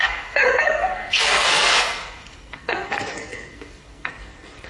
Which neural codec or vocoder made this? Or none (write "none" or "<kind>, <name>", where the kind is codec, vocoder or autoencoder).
codec, SNAC